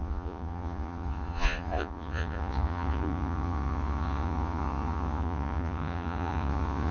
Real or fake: fake